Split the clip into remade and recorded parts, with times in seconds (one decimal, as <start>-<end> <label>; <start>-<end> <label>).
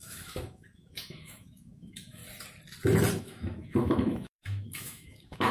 0.0-2.2 remade; 2.2-3.2 recorded; 3.2-5.5 remade